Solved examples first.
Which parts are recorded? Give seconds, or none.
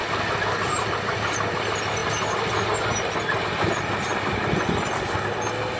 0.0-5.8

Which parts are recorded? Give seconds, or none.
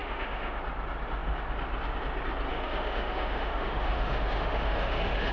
0.6-2.5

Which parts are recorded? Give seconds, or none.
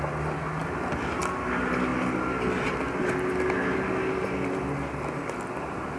0.0-6.0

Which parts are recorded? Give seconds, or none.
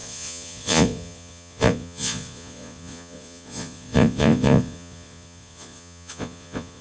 none